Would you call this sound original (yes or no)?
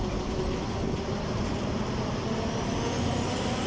yes